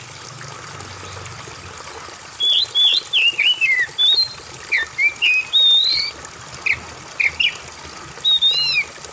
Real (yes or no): yes